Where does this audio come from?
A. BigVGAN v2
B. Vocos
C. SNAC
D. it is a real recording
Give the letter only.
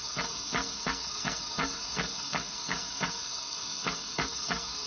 C